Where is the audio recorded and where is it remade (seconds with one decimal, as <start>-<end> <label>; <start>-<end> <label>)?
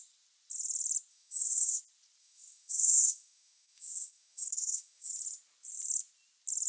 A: 0.0-1.1 recorded; 1.1-1.8 remade; 1.8-2.2 recorded; 2.2-5.1 remade; 5.1-6.7 recorded